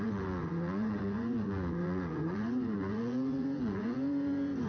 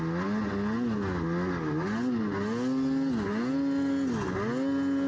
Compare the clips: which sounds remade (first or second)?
first